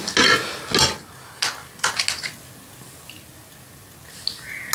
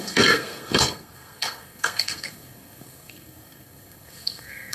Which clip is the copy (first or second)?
second